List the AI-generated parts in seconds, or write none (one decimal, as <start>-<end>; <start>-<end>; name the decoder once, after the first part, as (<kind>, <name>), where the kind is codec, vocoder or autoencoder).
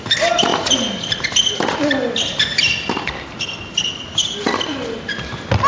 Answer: none